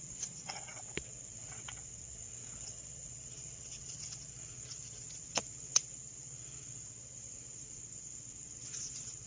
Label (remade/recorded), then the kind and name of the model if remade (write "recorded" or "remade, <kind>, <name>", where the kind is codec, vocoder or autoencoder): remade, vocoder, WaveNeXt